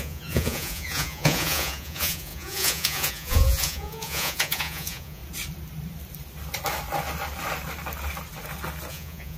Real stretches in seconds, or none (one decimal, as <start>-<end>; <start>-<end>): 5.2-8.9